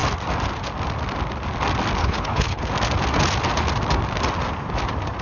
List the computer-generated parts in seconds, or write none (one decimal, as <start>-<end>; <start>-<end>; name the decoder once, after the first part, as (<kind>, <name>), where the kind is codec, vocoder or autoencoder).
2.0-2.7 (codec, HILCodec)